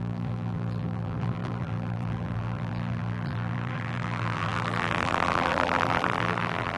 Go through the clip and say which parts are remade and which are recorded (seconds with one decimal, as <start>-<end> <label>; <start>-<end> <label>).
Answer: 0.0-6.8 remade